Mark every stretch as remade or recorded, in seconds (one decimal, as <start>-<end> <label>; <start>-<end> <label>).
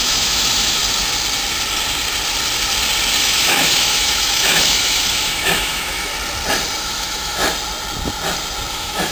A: 0.0-0.8 remade; 0.8-3.2 recorded; 3.2-6.1 remade; 6.1-6.8 recorded; 6.8-7.4 remade; 7.4-8.7 recorded; 8.7-9.1 remade